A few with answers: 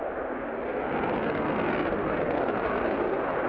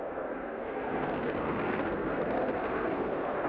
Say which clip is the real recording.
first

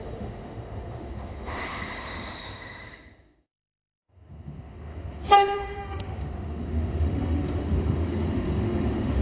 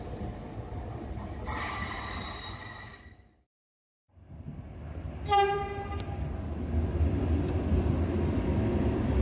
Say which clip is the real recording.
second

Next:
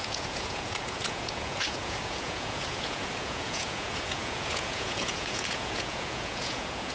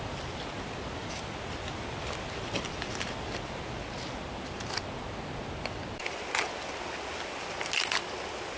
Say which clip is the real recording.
second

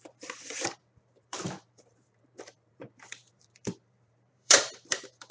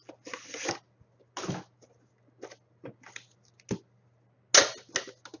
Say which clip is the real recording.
second